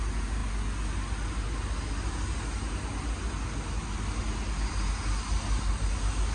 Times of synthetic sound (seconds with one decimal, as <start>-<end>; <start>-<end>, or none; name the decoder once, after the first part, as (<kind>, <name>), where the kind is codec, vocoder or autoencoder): none